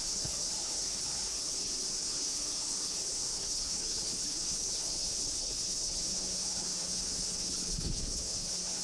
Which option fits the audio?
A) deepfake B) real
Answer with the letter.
A